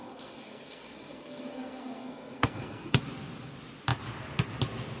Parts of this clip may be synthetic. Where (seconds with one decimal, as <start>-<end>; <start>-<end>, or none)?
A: 0.0-3.0